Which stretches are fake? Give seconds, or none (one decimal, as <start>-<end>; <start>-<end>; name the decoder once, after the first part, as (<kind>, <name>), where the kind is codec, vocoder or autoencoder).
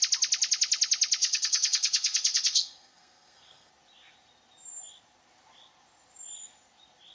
1.2-3.7 (codec, SNAC)